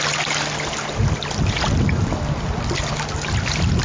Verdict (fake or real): real